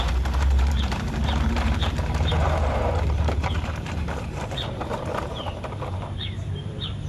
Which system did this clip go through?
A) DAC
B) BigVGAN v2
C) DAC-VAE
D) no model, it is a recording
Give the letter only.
B